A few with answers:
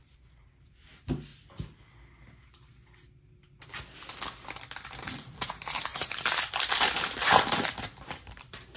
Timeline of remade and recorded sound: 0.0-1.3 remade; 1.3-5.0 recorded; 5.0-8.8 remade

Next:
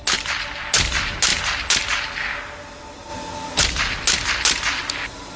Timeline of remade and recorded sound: 0.0-5.4 recorded